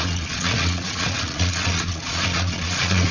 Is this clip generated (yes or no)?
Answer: yes